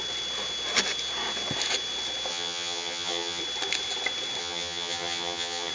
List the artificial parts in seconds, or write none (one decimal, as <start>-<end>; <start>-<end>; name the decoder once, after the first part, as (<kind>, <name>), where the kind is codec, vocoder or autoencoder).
2.3-3.4 (vocoder, HiFi-GAN); 4.4-5.7